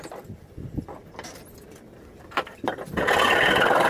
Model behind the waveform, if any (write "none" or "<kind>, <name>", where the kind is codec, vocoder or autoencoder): none